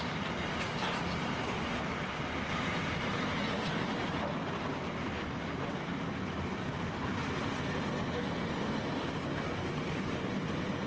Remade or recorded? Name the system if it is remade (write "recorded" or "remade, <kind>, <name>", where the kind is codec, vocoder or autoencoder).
recorded